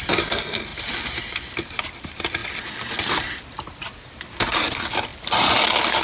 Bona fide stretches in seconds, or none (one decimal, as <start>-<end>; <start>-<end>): 0.0-6.0